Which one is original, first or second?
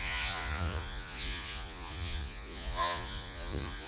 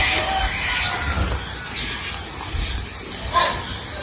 second